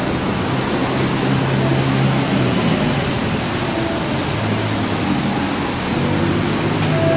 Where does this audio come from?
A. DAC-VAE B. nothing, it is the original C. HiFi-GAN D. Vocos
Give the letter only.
B